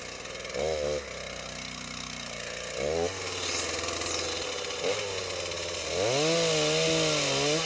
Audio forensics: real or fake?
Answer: real